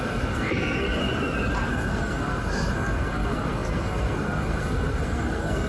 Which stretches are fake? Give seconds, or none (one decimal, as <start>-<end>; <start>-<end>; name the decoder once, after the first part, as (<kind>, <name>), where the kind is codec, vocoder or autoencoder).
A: 0.0-1.0 (codec, SNAC); 1.7-5.7